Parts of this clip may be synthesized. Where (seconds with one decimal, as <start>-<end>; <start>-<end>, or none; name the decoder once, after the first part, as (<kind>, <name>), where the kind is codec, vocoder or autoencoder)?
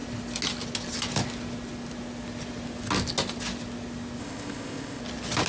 4.2-5.0 (codec, ZipCodec)